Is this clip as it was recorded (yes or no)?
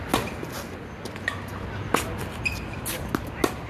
yes